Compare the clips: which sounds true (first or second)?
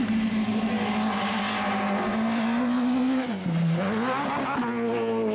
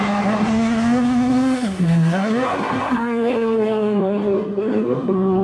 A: first